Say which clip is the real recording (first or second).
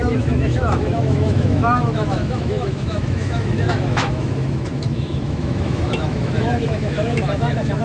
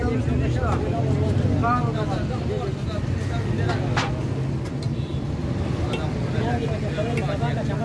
second